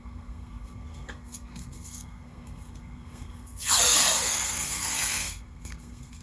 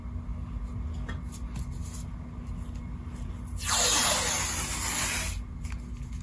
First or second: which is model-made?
first